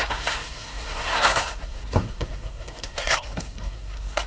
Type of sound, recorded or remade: remade